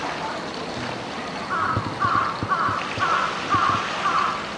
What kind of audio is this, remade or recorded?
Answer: recorded